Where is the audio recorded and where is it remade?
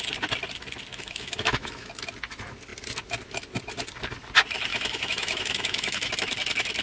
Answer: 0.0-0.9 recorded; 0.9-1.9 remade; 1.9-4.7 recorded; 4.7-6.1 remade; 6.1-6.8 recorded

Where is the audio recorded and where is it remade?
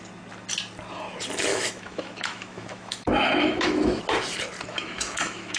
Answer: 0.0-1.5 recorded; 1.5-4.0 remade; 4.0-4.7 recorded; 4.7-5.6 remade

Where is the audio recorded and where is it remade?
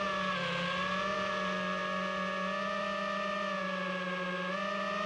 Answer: 0.0-5.1 recorded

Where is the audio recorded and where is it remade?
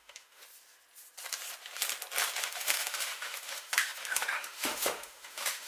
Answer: 0.0-0.4 remade; 0.4-2.4 recorded; 2.4-5.7 remade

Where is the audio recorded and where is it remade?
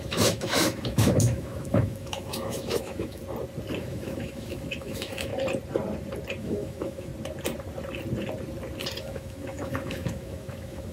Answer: 0.0-3.2 remade; 3.2-3.8 recorded; 3.8-5.3 remade; 5.3-6.4 recorded; 6.4-7.1 remade; 7.1-9.0 recorded; 9.0-10.9 remade